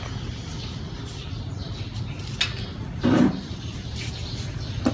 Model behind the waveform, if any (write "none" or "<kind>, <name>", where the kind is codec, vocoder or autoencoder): none